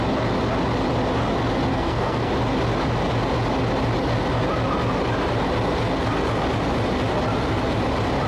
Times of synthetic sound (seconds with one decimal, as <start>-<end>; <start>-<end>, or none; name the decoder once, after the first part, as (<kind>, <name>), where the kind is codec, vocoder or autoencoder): 1.7-2.3 (codec, SNAC)